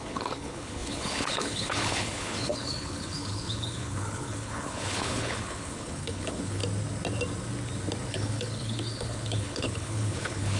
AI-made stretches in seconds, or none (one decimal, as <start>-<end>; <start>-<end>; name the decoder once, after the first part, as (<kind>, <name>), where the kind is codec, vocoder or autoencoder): 0.0-6.6 (codec, HILCodec); 8.1-10.6